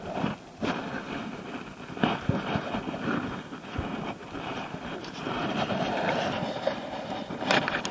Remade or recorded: recorded